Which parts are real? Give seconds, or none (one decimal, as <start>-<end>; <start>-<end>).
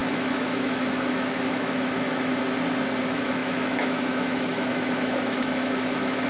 2.3-3.0